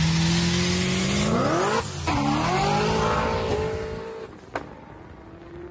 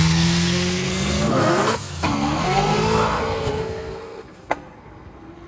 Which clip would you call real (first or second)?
first